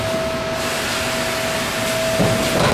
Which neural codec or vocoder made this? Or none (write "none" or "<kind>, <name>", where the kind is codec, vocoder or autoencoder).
none